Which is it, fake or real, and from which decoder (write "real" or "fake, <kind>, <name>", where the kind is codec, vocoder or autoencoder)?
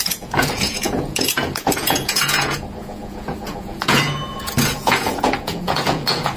fake, vocoder, Vocos